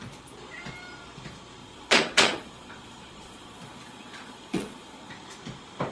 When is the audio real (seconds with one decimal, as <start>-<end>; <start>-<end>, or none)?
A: 0.0-1.6; 5.1-5.9